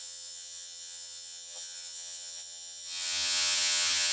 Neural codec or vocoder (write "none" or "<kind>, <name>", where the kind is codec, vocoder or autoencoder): vocoder, HiFi-GAN